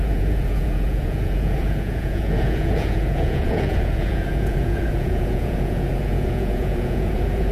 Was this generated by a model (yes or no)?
yes